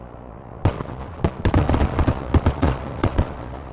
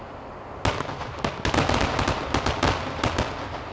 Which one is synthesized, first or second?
first